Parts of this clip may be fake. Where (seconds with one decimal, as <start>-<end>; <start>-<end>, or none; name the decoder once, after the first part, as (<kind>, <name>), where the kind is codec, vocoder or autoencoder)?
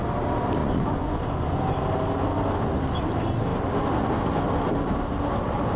0.6-1.6 (vocoder, Vocos)